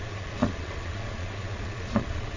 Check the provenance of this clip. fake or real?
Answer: fake